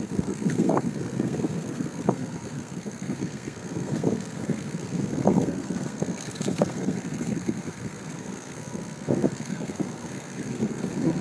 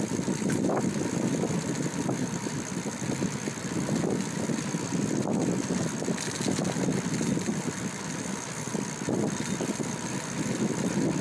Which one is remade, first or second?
first